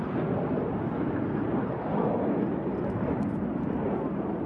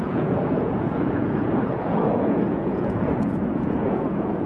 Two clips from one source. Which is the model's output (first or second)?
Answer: second